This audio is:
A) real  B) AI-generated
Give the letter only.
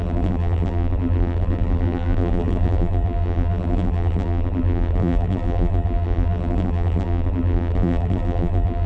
B